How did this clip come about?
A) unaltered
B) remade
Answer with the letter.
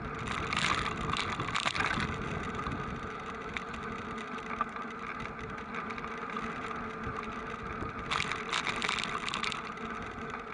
A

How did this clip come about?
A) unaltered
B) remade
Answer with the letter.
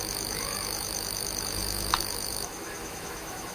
B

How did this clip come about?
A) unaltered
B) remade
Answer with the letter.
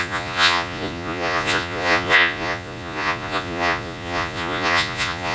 B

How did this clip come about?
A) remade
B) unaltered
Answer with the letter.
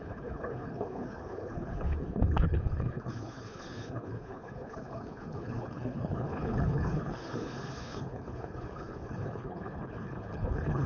A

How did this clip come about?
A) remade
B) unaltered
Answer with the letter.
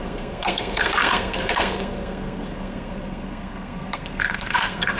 A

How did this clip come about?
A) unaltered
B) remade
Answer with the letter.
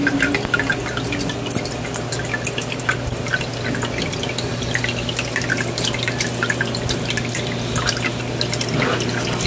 A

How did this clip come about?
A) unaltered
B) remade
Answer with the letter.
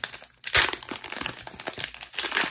A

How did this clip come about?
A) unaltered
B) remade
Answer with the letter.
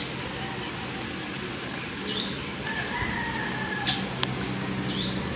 A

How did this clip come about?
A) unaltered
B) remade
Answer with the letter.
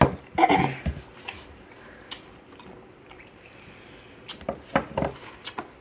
A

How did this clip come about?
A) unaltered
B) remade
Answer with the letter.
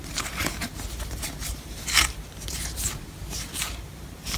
B